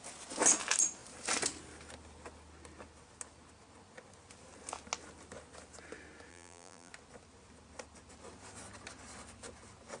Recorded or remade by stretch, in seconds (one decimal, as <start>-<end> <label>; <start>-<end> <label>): 0.0-6.3 recorded; 6.3-6.9 remade; 6.9-10.0 recorded